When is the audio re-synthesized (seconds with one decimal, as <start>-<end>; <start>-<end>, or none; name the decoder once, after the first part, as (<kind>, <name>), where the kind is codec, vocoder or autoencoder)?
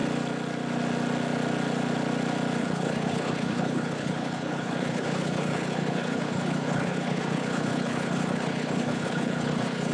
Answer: 2.6-9.9 (codec, HILCodec)